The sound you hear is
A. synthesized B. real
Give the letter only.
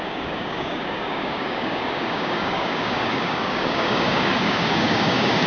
A